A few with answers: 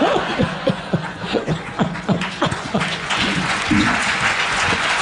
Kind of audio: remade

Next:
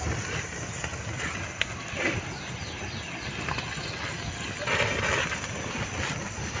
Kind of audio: recorded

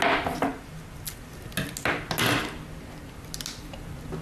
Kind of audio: recorded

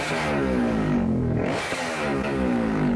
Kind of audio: remade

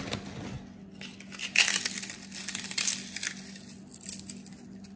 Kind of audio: recorded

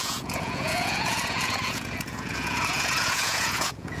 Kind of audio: remade